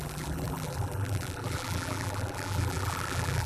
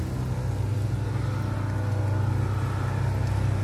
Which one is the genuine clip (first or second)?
second